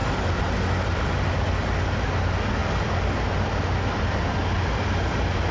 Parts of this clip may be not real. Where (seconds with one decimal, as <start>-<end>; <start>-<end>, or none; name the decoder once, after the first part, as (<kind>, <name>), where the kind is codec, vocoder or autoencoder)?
0.0-0.5 (vocoder, BigVGAN v2)